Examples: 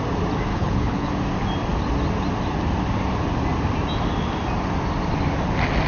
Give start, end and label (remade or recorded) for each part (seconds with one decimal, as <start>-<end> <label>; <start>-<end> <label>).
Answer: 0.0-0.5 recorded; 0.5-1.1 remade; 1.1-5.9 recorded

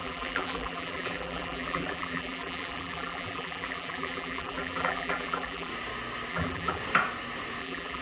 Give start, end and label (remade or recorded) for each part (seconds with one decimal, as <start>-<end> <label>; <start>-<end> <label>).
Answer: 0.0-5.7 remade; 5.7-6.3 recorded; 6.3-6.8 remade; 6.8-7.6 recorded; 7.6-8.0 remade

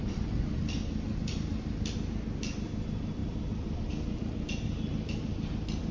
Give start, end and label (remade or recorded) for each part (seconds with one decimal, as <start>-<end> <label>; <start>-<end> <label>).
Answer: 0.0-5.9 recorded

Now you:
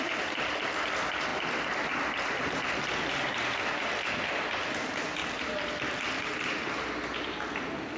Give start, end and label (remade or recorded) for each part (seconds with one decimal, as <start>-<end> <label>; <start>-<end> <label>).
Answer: 0.0-1.3 recorded; 1.3-3.1 remade; 3.1-5.2 recorded; 5.2-6.7 remade; 6.7-8.0 recorded

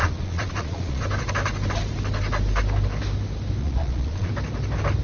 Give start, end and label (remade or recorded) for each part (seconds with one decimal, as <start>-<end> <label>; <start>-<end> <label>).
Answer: 0.0-1.0 remade; 1.0-3.6 recorded; 3.6-4.3 remade; 4.3-5.0 recorded